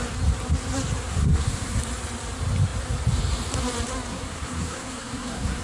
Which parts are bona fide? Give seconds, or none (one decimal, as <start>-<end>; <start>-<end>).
0.0-1.1; 1.8-4.1